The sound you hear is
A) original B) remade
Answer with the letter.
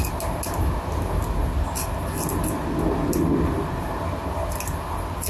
A